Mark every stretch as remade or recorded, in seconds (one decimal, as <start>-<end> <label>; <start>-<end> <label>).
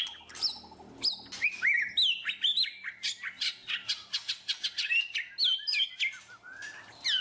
0.0-7.2 recorded